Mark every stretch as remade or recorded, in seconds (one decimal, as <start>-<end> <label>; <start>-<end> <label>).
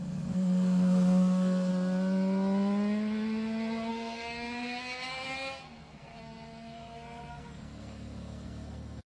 0.0-1.7 remade; 1.7-3.9 recorded; 3.9-9.1 remade